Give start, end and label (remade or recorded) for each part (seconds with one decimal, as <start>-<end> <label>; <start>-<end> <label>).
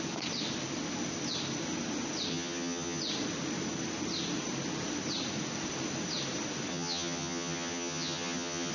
0.0-2.3 recorded; 2.3-3.0 remade; 3.0-6.7 recorded; 6.7-8.7 remade